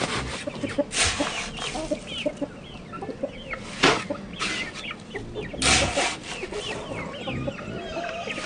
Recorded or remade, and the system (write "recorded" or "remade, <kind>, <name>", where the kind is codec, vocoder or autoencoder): recorded